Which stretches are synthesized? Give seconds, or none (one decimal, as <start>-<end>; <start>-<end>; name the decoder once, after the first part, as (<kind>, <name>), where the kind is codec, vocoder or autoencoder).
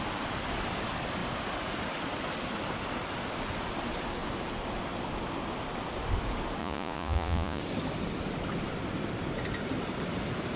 6.6-7.6 (vocoder, Vocos)